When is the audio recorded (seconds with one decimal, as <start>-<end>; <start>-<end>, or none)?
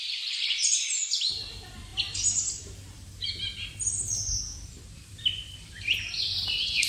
none